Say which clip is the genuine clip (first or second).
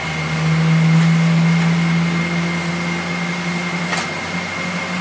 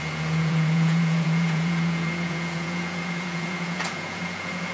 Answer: first